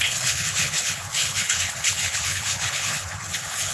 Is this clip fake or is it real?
fake